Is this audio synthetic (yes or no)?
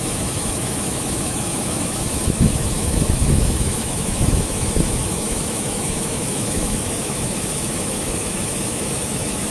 yes